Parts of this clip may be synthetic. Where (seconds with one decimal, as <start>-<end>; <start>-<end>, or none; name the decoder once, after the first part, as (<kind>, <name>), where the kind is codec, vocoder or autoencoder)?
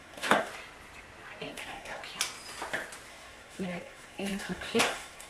0.0-0.5 (codec, SNAC); 1.5-2.0; 3.1-5.3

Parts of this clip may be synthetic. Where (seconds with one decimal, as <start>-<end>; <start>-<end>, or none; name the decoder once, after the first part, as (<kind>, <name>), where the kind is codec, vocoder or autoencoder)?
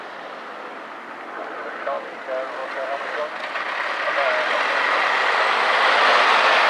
none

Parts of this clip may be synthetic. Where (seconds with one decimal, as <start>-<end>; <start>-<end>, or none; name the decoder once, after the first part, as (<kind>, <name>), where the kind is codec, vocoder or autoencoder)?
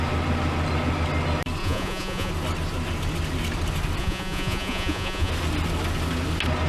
1.6-2.3 (vocoder, Vocos); 4.0-5.3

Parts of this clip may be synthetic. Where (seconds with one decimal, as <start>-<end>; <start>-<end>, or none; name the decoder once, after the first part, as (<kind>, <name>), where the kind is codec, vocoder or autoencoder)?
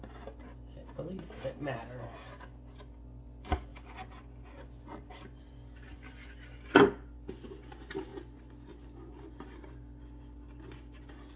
none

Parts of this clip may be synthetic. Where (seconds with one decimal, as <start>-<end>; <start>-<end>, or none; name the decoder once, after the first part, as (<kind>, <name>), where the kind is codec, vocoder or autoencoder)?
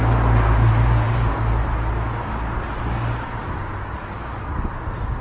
none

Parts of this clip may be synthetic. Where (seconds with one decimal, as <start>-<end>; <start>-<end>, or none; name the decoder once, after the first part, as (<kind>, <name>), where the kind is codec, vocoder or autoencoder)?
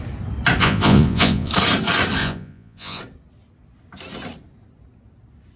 0.6-1.5 (vocoder, Vocos); 2.2-3.0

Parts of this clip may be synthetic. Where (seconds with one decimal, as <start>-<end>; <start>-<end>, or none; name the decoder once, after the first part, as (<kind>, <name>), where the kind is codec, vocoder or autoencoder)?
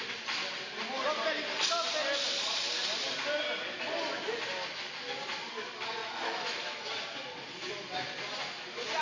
6.0-6.9 (autoencoder, DAC-VAE)